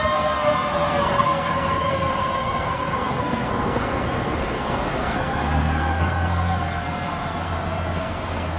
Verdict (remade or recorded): remade